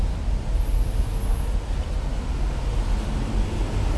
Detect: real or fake real